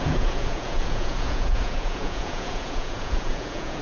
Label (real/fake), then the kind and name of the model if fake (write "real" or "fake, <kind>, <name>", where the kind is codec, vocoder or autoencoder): fake, vocoder, Vocos